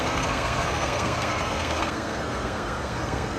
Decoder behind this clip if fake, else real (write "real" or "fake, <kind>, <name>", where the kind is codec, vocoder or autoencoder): fake, codec, SNAC